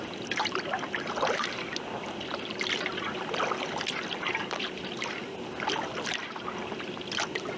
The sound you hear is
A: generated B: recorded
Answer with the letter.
B